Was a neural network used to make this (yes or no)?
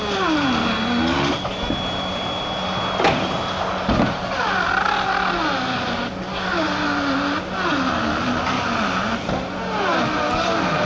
no